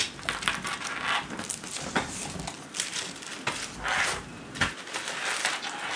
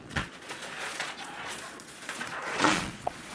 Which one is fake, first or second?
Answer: second